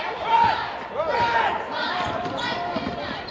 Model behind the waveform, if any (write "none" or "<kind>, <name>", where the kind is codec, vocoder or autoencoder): none